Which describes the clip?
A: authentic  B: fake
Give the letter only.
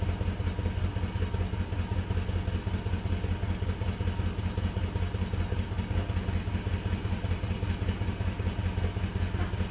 A